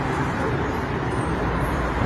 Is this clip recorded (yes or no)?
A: no